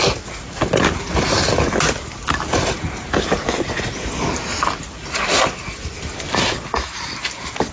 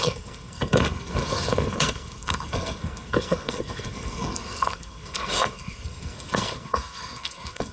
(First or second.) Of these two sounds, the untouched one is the first